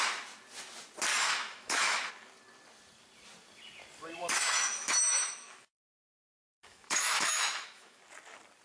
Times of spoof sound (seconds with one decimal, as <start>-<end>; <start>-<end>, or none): 1.1-2.1; 4.2-8.0